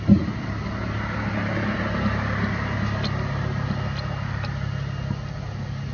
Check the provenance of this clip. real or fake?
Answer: real